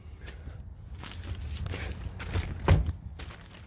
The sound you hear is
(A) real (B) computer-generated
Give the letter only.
A